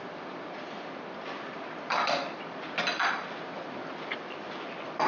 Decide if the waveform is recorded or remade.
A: remade